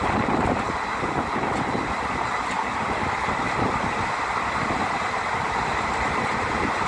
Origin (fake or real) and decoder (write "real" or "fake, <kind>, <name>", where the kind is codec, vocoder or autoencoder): real